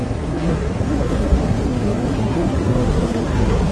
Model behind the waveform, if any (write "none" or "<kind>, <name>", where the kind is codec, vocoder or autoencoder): codec, SNAC